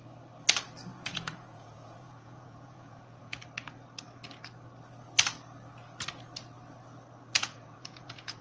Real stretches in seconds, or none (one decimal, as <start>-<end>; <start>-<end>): 0.0-0.9; 3.4-7.4